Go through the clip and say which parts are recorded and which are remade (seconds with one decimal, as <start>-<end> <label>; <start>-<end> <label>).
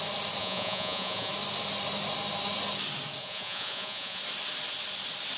0.0-0.4 recorded; 0.4-1.3 remade; 1.3-3.2 recorded; 3.2-4.2 remade; 4.2-5.4 recorded